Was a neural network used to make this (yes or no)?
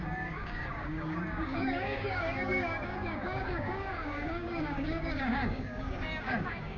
yes